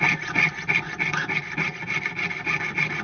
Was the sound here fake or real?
real